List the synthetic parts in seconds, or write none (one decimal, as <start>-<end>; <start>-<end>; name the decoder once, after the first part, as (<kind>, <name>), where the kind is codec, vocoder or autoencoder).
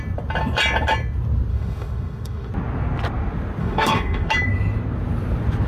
1.5-2.5 (autoencoder, DAC-VAE); 3.6-4.3